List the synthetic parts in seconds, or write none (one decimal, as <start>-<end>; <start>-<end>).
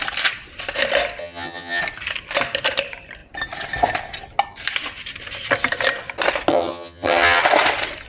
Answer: 1.2-1.8; 6.5-7.4